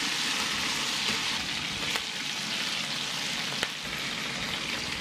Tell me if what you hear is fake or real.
real